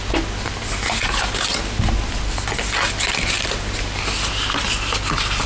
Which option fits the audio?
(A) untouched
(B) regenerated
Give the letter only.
A